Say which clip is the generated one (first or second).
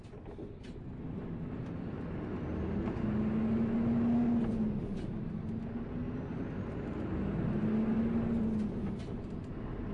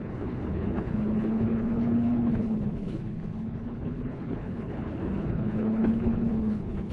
second